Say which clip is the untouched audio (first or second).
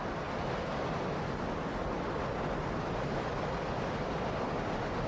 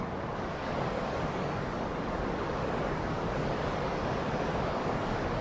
first